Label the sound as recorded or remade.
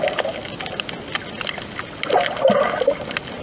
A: recorded